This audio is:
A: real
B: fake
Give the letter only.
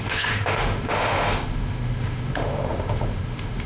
B